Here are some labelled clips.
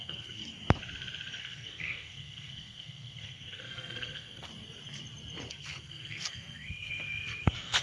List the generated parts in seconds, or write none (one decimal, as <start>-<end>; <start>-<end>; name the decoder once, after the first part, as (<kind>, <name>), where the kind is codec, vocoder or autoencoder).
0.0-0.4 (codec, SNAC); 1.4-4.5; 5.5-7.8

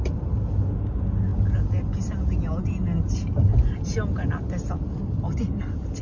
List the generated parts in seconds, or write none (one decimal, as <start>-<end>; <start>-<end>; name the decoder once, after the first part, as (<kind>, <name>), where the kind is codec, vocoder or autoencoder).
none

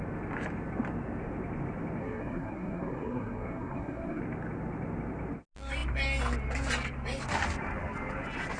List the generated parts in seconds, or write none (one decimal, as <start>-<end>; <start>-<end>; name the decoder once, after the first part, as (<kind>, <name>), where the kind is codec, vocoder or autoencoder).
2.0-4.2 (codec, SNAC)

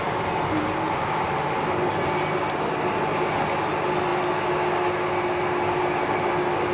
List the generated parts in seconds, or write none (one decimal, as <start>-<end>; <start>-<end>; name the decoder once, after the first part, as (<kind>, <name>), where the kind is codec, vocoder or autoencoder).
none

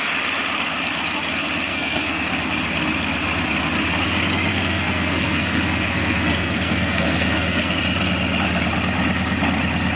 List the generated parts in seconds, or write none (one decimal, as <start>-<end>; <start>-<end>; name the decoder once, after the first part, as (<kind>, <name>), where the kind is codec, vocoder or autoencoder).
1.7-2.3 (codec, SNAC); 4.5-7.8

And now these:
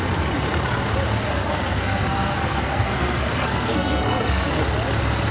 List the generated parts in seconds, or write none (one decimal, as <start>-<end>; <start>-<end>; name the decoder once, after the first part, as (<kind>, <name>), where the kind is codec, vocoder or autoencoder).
1.3-4.5 (codec, SNAC)

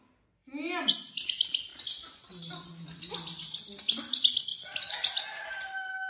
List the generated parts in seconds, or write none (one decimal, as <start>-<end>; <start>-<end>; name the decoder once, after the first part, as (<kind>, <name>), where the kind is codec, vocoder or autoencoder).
none

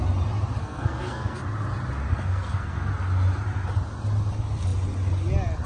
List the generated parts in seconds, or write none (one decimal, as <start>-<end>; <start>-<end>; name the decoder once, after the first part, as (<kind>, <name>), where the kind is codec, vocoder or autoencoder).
0.6-1.4 (codec, SNAC); 2.1-2.9